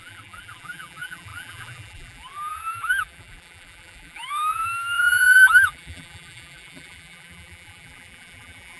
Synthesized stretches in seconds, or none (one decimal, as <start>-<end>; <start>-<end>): 0.0-8.8